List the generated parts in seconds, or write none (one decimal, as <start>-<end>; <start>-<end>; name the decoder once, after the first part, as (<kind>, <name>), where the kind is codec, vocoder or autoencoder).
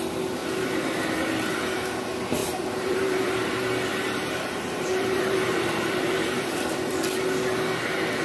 2.4-3.5 (vocoder, BigVGAN v2); 3.9-6.6